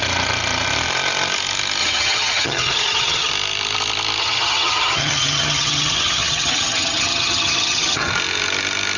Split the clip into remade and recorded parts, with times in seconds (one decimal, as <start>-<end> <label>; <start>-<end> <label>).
0.0-1.8 recorded; 1.8-3.3 remade; 3.3-4.2 recorded; 4.2-8.1 remade; 8.1-9.0 recorded